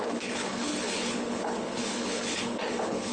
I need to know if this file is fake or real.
fake